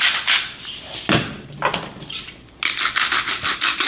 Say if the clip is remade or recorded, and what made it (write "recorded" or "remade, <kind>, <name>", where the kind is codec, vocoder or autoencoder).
recorded